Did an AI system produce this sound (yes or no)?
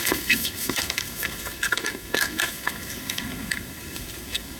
yes